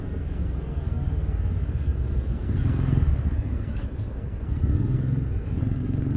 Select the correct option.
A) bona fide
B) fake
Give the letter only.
B